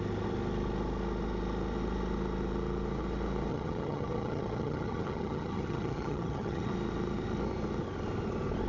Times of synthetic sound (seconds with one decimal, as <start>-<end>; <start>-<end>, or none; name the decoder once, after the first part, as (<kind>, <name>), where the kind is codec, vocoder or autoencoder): 3.5-6.7 (vocoder, HiFi-GAN)